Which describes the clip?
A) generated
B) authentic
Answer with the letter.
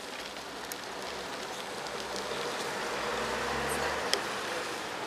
B